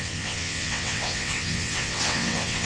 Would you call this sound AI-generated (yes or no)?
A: yes